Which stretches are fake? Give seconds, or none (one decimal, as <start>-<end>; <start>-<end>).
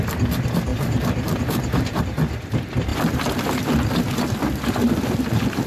0.7-2.0